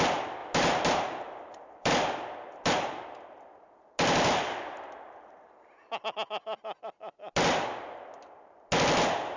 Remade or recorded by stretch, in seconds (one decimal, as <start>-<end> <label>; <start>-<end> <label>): 0.0-0.4 recorded; 0.4-1.9 remade; 1.9-9.4 recorded